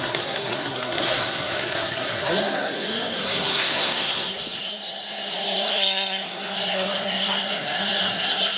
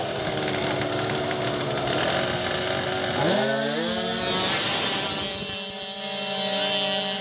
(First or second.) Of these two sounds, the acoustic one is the second